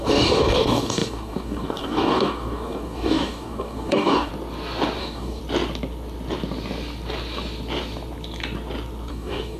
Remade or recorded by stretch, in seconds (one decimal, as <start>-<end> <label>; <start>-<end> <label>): 0.0-4.3 remade; 4.3-5.0 recorded; 5.0-5.4 remade; 5.4-9.1 recorded; 9.1-9.6 remade